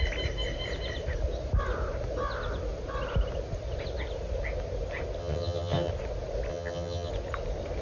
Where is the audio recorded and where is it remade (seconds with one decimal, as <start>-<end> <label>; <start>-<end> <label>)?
0.0-5.2 recorded; 5.2-5.9 remade; 5.9-6.5 recorded; 6.5-7.1 remade; 7.1-7.8 recorded